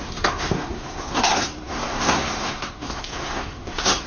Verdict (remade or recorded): remade